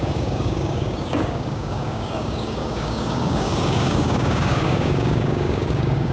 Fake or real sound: fake